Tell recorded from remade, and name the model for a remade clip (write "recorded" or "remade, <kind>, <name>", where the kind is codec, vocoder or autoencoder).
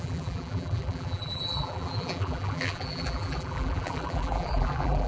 remade, vocoder, BigVGAN v2